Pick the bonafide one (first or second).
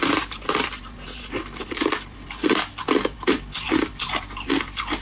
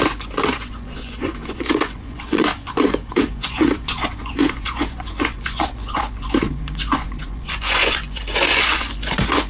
first